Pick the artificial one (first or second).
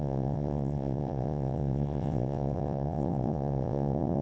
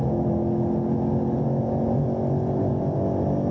first